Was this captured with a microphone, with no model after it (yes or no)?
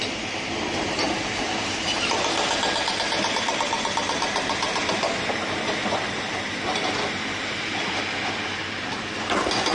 yes